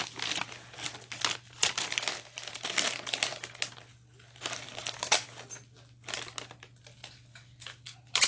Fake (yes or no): no